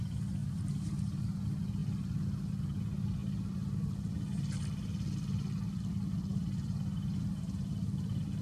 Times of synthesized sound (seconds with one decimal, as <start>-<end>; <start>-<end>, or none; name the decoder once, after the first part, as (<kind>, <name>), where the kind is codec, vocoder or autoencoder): 0.4-1.0 (vocoder, BigVGAN v2); 6.3-8.4